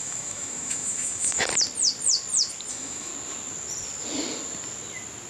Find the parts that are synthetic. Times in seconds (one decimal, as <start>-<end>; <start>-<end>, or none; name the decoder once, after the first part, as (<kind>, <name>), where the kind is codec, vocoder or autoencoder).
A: 0.0-1.5 (autoencoder, DAC-VAE); 2.7-3.1